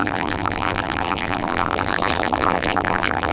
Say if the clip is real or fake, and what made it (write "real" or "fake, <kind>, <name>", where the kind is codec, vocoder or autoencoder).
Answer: fake, vocoder, BigVGAN v2